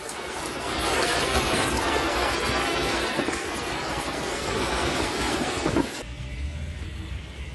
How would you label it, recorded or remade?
remade